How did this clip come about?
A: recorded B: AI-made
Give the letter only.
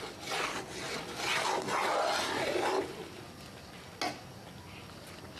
A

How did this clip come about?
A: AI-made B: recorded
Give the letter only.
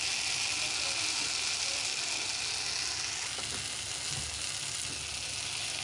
B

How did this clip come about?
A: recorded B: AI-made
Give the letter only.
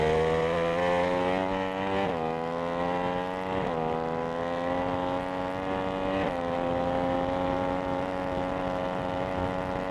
A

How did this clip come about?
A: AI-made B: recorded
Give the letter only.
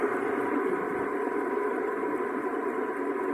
B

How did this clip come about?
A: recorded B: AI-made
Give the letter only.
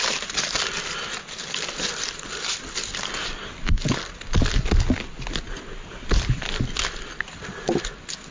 A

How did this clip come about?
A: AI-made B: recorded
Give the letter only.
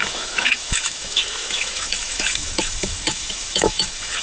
A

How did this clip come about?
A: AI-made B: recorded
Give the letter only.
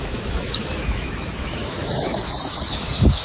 A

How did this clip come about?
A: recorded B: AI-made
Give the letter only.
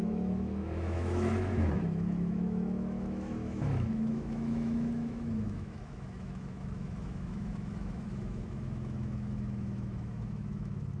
B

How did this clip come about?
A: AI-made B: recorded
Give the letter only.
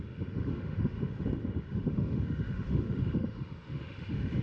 A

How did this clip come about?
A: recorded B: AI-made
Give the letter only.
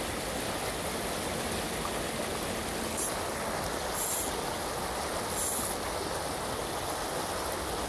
A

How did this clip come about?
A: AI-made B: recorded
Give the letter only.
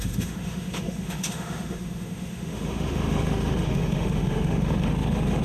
A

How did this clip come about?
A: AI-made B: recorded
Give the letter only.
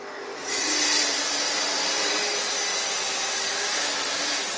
B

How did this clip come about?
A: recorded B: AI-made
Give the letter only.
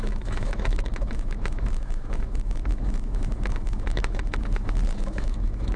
B